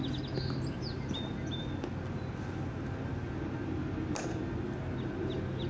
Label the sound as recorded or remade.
recorded